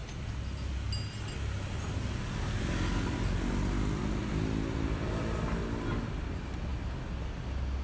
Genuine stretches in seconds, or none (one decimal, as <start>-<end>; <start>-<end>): 0.0-7.8